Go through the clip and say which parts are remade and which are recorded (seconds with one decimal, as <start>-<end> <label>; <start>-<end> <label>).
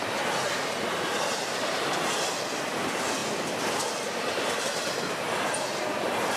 0.0-6.4 recorded